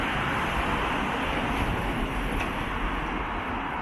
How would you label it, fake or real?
real